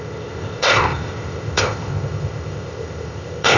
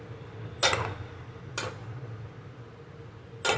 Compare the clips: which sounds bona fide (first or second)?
second